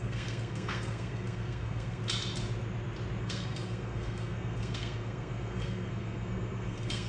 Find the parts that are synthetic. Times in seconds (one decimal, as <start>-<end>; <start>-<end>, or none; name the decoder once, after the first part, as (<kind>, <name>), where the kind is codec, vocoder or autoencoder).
0.0-2.0 (codec, SNAC); 3.2-7.1